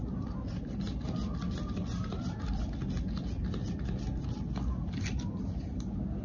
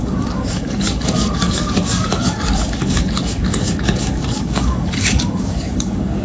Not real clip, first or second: second